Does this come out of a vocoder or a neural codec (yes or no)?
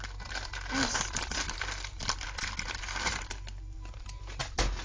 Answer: no